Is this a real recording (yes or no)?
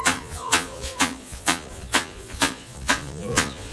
no